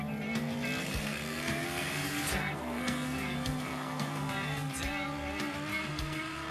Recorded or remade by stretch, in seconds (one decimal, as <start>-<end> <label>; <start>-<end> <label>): 0.0-0.8 recorded; 0.8-4.7 remade; 4.7-5.7 recorded; 5.7-6.5 remade